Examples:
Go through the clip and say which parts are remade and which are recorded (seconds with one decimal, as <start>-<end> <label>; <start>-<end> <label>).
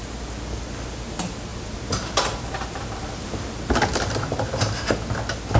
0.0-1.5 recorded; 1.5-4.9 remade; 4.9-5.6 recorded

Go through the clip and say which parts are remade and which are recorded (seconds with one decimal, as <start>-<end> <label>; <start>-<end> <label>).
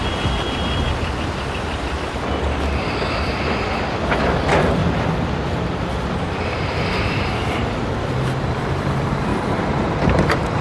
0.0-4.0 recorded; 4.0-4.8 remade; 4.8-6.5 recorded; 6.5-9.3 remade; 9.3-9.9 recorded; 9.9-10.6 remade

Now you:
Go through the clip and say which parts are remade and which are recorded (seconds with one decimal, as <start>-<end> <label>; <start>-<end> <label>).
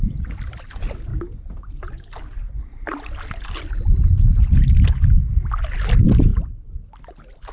0.0-7.5 recorded